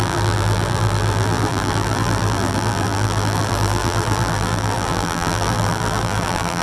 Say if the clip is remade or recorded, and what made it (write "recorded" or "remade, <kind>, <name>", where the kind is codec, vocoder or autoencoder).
remade, vocoder, BigVGAN v2